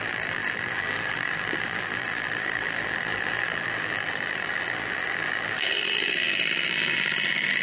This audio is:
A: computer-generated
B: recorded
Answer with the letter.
A